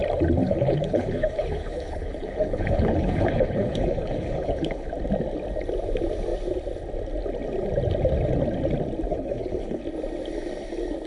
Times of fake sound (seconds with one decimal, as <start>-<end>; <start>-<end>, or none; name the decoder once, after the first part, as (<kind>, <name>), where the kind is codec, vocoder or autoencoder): 0.4-4.9 (codec, HILCodec); 9.1-9.8